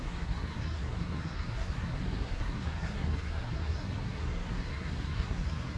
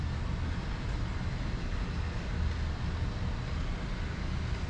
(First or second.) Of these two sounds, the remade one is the first